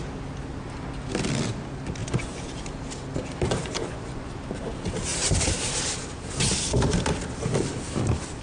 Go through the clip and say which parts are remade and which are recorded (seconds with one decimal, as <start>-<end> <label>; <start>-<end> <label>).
0.0-2.0 recorded; 2.0-2.5 remade; 2.5-3.6 recorded; 3.6-4.3 remade; 4.3-8.4 recorded